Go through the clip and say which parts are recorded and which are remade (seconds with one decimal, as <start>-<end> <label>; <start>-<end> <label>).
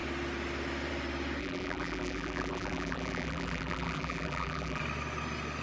0.0-1.4 recorded; 1.4-4.8 remade; 4.8-5.6 recorded